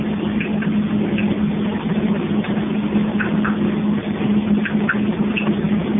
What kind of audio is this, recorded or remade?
recorded